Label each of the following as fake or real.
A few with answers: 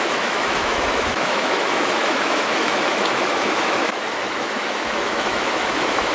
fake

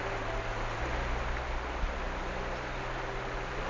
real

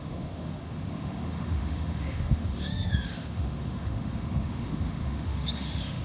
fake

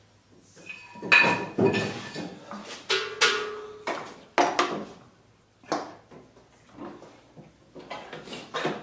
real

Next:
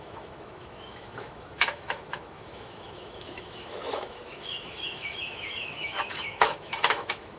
fake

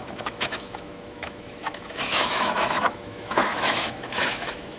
fake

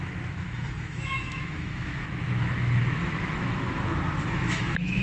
fake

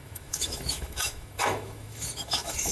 fake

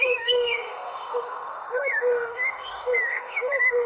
fake